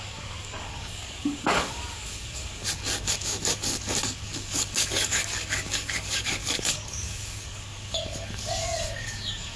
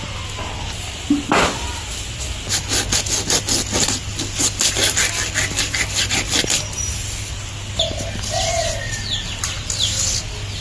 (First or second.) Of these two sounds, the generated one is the first